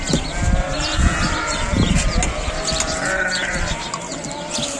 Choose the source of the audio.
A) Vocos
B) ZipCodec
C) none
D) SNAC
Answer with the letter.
C